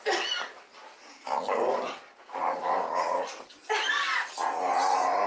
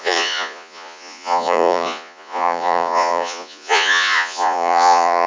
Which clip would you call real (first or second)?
first